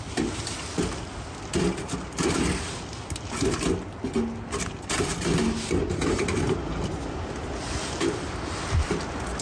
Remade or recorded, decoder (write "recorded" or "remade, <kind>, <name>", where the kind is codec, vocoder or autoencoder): recorded